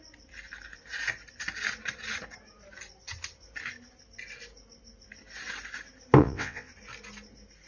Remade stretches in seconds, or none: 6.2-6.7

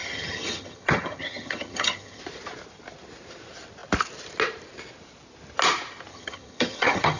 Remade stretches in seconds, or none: 0.0-2.2; 6.1-7.2

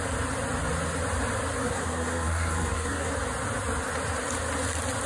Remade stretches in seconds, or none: 1.6-3.1

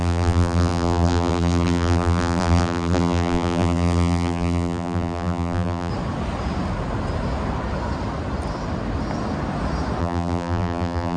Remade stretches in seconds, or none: 0.0-5.9; 10.0-11.2